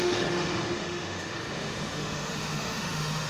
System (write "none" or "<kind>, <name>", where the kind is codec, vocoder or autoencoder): autoencoder, DAC-VAE